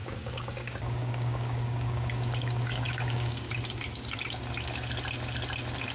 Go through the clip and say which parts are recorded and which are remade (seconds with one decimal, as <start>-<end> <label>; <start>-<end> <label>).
0.0-3.5 remade; 3.5-5.9 recorded